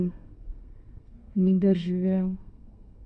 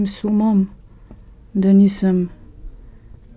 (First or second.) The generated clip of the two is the first